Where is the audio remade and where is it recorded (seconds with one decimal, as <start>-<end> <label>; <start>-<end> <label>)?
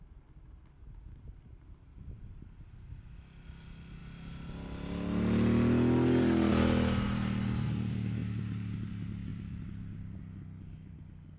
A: 0.0-9.3 recorded; 9.3-10.2 remade; 10.2-11.4 recorded